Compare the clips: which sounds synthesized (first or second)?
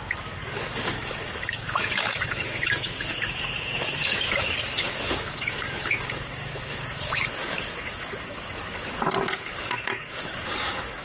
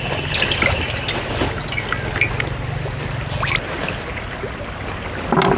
first